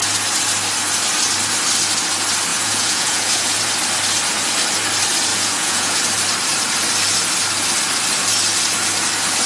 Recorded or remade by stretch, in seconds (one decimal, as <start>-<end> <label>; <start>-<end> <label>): 0.0-2.5 recorded; 2.5-3.6 remade; 3.6-5.3 recorded; 5.3-6.0 remade; 6.0-9.5 recorded